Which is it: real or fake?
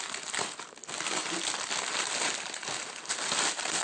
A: real